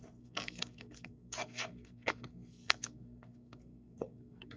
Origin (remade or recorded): remade